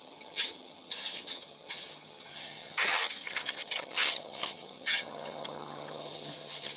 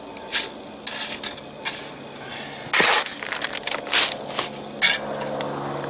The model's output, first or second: first